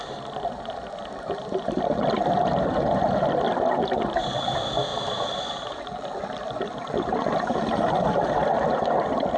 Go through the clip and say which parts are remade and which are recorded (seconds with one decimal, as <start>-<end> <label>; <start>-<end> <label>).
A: 0.0-9.4 recorded